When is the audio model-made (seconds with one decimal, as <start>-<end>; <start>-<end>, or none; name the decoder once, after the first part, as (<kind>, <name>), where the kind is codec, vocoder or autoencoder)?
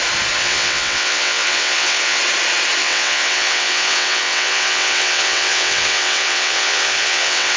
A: 0.4-2.2 (vocoder, WaveNeXt); 2.8-7.6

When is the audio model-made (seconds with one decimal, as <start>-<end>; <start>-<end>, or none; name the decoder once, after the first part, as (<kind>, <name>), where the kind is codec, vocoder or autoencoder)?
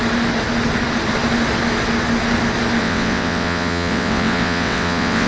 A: 2.8-5.3 (vocoder, WaveNeXt)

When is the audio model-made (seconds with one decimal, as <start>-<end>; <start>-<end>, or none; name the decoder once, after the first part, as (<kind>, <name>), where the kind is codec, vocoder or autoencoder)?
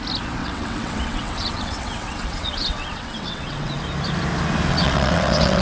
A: 0.4-3.8 (vocoder, WaveNeXt); 4.7-5.6